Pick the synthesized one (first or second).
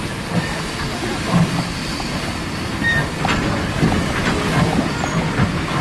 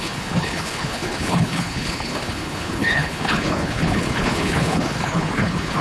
second